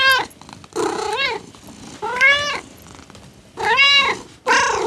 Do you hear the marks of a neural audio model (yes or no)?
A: no